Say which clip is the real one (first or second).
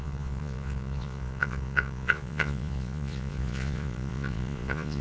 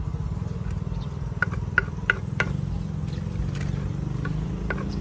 second